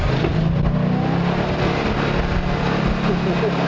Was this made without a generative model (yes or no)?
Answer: yes